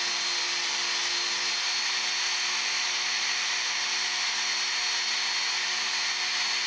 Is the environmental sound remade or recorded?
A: recorded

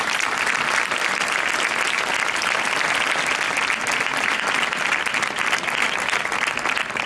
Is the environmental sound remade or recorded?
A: recorded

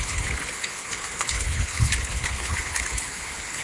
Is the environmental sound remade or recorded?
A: remade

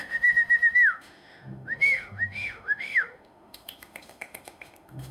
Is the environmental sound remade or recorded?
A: remade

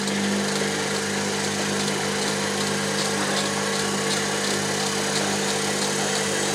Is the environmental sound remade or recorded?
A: recorded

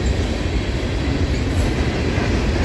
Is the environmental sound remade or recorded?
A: recorded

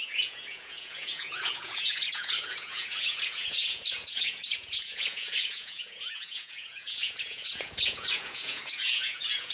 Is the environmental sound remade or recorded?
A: remade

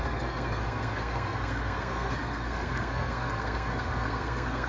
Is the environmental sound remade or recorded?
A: remade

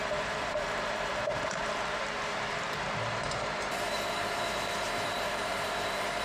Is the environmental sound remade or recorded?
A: remade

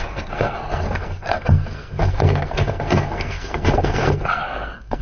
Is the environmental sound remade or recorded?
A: remade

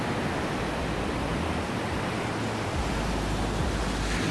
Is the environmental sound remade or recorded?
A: recorded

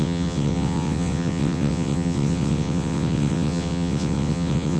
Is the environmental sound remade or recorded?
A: remade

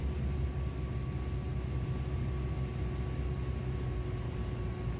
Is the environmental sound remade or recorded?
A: recorded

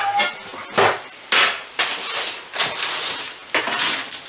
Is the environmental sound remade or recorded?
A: recorded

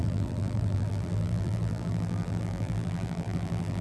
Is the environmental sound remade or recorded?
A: remade